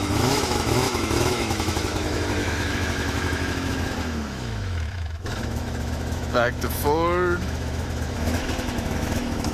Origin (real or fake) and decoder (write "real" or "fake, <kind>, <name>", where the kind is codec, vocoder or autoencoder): fake, autoencoder, DAC-VAE